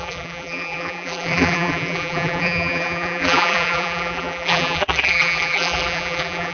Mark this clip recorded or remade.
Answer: remade